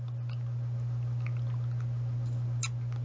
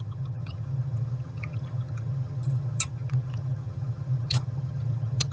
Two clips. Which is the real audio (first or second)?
first